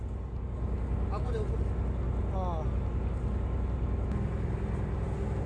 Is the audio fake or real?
real